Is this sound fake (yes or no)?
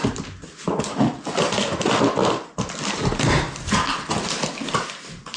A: no